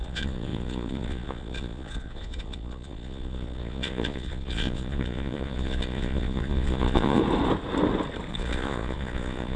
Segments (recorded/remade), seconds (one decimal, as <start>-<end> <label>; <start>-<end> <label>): 0.0-7.2 remade; 7.2-8.3 recorded; 8.3-9.6 remade